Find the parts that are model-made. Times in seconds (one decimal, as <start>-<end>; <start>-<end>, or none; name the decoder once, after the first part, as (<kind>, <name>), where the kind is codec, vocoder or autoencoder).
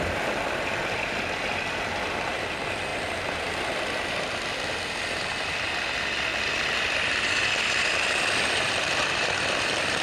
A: 0.0-2.9 (vocoder, BigVGAN v2); 4.1-6.3; 7.8-10.0